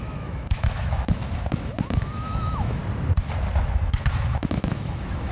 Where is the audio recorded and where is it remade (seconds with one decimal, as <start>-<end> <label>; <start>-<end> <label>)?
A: 0.0-2.8 remade; 2.8-4.1 recorded; 4.1-5.3 remade